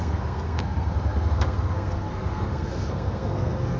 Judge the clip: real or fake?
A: fake